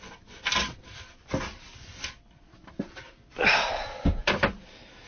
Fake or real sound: real